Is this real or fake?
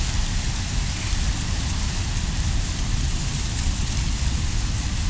real